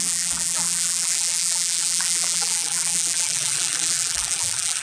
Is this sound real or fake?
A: fake